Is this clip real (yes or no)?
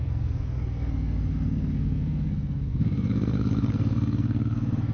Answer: no